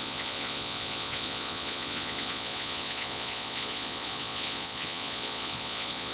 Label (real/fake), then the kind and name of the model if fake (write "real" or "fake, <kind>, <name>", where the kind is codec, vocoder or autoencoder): fake, vocoder, Vocos